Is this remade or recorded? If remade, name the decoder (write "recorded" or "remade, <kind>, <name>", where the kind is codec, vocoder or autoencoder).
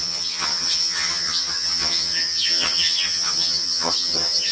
remade, vocoder, HiFi-GAN